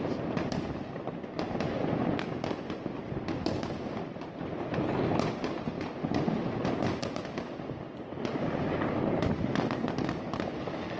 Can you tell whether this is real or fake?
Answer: real